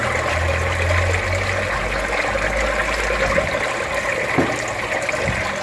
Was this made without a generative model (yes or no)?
yes